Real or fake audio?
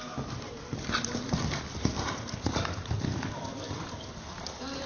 fake